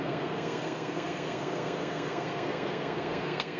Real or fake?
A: fake